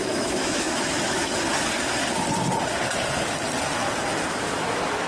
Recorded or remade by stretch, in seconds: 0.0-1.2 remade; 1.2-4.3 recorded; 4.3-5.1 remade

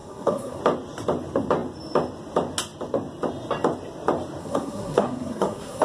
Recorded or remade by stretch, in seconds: 0.0-0.6 remade; 0.6-4.4 recorded; 4.4-5.8 remade

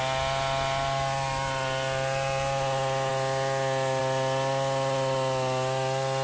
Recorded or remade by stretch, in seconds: 0.0-6.2 recorded

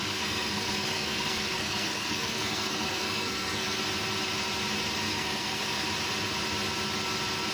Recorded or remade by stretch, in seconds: 0.0-3.8 remade; 3.8-5.1 recorded; 5.1-5.6 remade; 5.6-7.5 recorded

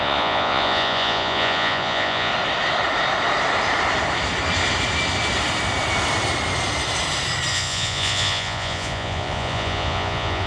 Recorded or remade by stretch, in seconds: 0.0-2.3 remade; 2.3-7.5 recorded; 7.5-10.5 remade

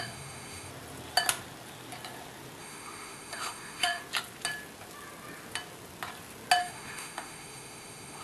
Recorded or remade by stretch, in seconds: 0.0-0.7 remade; 0.7-2.6 recorded; 2.6-4.0 remade; 4.0-6.6 recorded; 6.6-8.2 remade

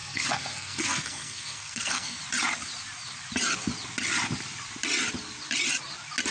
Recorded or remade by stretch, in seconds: 0.0-2.2 remade; 2.2-6.3 recorded